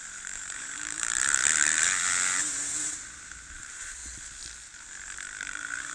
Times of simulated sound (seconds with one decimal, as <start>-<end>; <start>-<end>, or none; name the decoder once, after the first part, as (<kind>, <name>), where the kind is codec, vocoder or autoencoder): 0.0-1.4 (vocoder, BigVGAN v2); 3.5-4.0; 5.4-5.9